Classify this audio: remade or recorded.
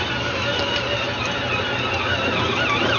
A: recorded